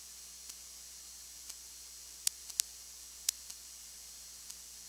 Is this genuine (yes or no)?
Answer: yes